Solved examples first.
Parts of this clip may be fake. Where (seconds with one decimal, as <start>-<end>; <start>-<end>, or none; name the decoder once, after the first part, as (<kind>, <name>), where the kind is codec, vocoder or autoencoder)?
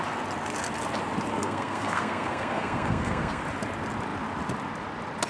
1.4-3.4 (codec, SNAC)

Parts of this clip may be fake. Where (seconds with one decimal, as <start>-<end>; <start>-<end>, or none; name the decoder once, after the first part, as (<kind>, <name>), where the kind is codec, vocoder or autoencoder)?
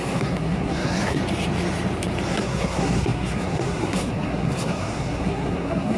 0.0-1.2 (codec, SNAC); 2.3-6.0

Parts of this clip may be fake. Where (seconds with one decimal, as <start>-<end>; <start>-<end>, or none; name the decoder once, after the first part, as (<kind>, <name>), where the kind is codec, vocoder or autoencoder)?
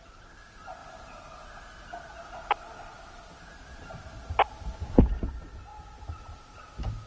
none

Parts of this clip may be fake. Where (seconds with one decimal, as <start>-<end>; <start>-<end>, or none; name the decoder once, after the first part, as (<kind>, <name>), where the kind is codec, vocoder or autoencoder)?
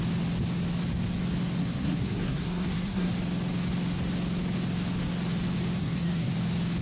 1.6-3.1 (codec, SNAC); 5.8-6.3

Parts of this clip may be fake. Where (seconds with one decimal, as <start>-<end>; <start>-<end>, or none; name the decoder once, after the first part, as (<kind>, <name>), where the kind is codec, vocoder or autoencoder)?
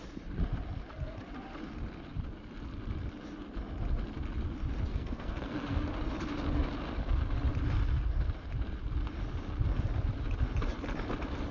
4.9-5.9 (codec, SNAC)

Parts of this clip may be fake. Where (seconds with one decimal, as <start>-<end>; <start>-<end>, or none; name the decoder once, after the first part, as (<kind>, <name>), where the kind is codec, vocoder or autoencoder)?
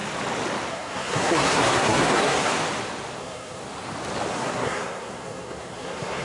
0.7-2.5 (codec, SNAC); 3.2-3.6; 4.3-6.2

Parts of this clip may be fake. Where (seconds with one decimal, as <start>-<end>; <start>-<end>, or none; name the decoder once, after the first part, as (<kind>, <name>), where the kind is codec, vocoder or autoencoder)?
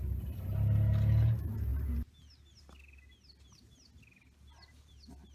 none